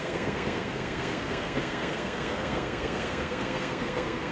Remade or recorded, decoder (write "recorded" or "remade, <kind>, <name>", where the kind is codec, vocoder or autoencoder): remade, codec, SNAC